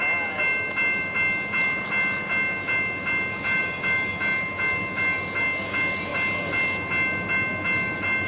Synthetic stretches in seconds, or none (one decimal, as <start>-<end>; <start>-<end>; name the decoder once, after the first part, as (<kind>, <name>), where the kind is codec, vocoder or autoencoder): none